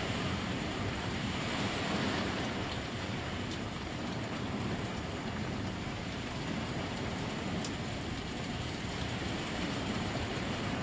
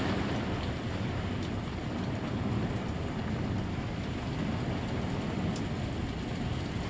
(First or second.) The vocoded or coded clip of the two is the first